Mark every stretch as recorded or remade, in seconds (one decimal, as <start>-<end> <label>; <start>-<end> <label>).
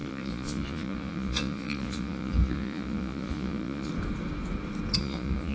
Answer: 0.0-3.9 remade; 3.9-5.0 recorded; 5.0-5.5 remade